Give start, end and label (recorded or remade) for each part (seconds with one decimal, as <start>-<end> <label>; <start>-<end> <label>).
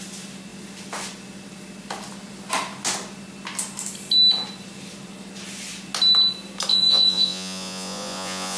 0.0-6.7 recorded; 6.7-8.6 remade